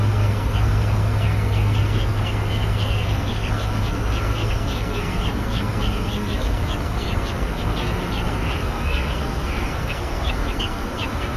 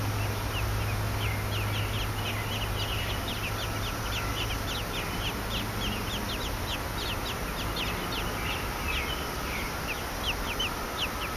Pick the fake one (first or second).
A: first